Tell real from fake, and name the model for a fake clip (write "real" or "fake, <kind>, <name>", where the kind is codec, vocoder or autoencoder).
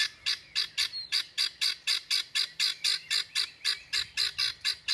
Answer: real